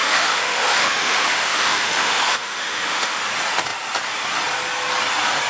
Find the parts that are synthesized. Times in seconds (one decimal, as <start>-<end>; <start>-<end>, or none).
0.0-3.2